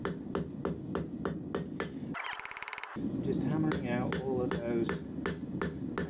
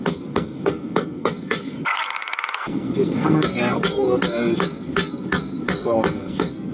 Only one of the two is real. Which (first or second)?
first